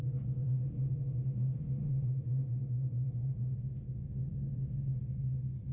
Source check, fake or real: real